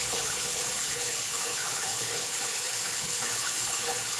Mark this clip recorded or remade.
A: remade